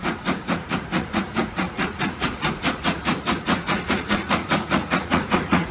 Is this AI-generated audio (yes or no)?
yes